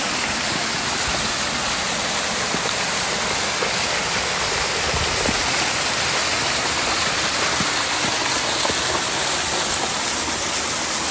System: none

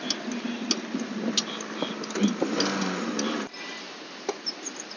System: none